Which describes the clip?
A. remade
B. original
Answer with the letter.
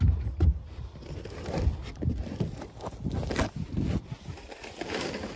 B